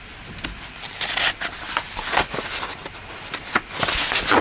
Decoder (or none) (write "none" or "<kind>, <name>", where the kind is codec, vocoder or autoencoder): none